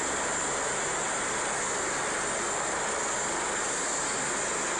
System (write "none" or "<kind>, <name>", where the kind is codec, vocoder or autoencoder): none